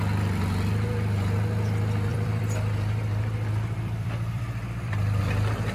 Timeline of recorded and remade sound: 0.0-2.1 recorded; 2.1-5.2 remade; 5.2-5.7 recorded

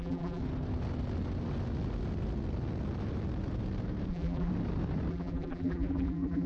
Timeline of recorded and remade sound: 0.0-0.4 remade; 0.4-4.1 recorded; 4.1-4.5 remade; 4.5-5.1 recorded; 5.1-6.5 remade

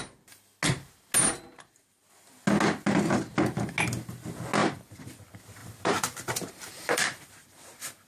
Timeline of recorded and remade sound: 0.0-4.6 recorded; 4.6-5.1 remade; 5.1-5.6 recorded; 5.6-7.3 remade; 7.3-8.1 recorded

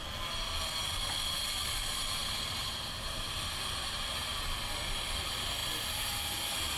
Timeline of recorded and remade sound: 0.0-2.2 recorded; 2.2-4.2 remade; 4.2-6.8 recorded

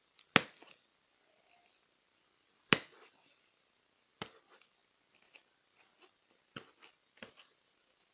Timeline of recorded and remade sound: 0.0-8.1 recorded